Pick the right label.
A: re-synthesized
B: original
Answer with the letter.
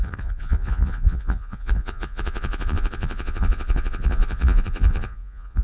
A